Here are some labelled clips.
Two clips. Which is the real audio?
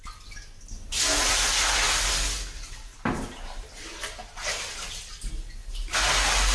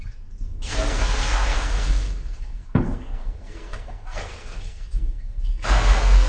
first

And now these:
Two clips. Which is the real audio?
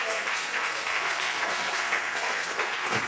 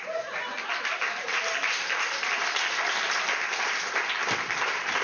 second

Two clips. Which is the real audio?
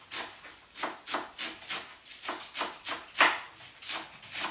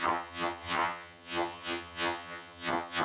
first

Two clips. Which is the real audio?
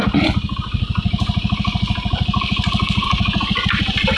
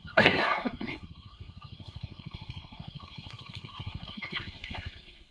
first